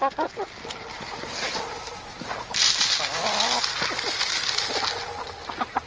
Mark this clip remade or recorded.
recorded